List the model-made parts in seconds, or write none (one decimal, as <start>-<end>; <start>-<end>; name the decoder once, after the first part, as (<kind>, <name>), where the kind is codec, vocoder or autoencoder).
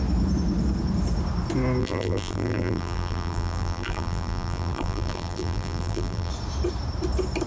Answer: 1.8-6.3 (vocoder, BigVGAN v2)